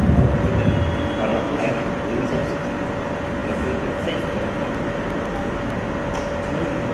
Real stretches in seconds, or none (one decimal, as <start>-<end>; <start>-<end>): 0.0-1.3; 1.9-6.9